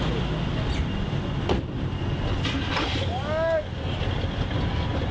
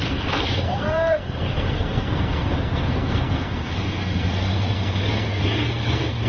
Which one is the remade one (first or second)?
second